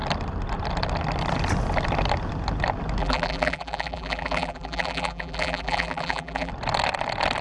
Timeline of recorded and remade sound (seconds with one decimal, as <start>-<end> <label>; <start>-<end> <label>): 0.0-3.0 recorded; 3.0-6.5 remade; 6.5-7.4 recorded